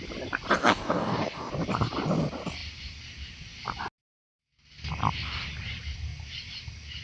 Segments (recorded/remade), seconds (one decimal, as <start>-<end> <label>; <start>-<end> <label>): 0.0-0.6 recorded; 0.6-1.5 remade; 1.5-7.0 recorded